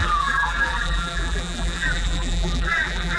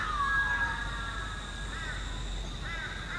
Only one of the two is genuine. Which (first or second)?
second